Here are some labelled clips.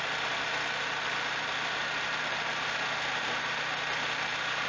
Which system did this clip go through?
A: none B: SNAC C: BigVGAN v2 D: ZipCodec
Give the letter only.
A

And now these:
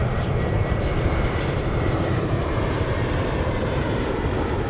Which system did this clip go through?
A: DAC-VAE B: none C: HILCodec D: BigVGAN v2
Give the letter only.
D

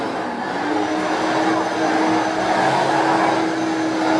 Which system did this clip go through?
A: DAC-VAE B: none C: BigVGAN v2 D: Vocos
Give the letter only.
B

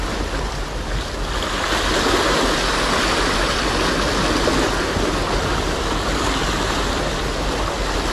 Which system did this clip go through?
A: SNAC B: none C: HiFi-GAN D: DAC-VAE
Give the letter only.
B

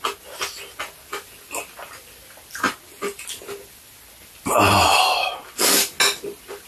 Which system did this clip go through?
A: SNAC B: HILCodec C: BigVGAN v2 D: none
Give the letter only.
D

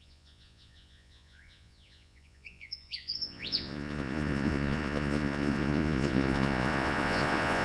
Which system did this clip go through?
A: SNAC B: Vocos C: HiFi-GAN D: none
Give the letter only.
B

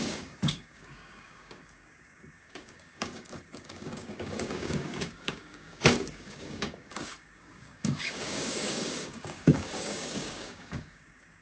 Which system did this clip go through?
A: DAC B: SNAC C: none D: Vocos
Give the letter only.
A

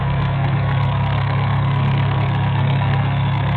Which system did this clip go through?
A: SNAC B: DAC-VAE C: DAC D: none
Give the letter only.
A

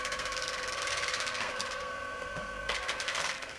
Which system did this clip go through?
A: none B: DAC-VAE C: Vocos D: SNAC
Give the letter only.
D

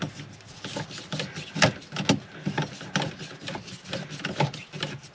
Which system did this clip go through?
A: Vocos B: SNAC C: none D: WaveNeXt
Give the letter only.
C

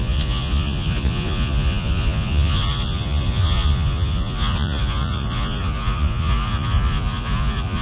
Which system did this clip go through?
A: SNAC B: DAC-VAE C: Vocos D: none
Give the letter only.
C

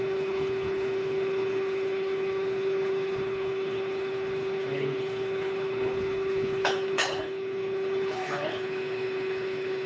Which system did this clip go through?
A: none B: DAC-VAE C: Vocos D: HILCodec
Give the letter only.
D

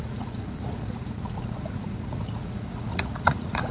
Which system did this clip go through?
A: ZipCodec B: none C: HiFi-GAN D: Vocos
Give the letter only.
D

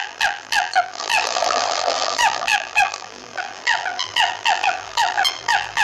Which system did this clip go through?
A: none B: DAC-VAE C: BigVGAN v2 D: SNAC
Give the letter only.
C